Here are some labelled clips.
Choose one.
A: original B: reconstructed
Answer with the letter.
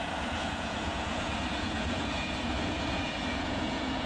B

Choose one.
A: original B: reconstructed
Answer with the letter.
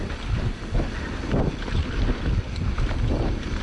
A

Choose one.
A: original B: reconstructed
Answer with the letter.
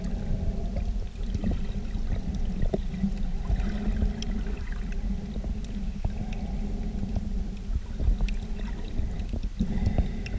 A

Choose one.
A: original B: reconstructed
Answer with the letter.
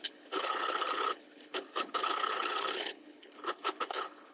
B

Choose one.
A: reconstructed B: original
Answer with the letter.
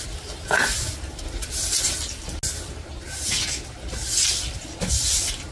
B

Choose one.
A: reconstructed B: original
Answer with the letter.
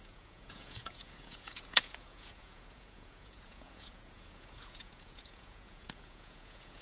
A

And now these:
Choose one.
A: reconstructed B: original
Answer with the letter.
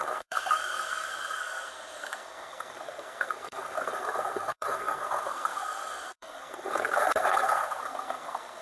A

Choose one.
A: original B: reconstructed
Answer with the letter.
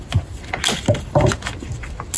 A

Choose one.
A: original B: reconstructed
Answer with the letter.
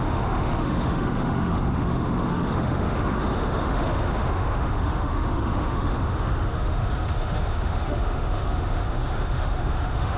B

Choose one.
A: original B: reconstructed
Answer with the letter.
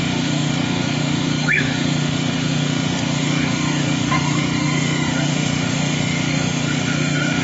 B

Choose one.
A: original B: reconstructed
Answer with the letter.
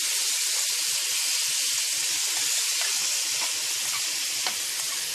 A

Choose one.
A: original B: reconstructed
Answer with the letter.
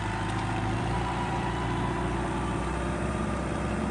B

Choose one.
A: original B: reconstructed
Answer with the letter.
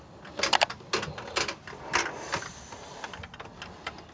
A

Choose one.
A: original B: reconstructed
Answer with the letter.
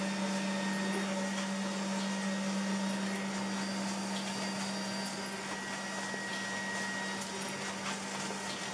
A